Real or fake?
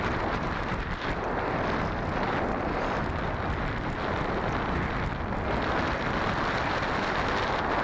real